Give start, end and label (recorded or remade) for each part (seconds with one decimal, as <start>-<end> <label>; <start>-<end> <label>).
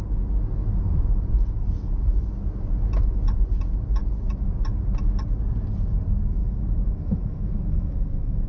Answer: 0.0-6.4 recorded; 6.4-8.5 remade